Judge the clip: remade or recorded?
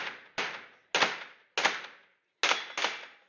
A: recorded